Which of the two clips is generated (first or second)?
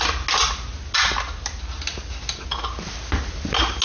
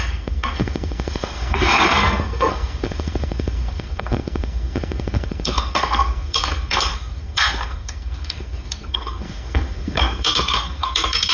second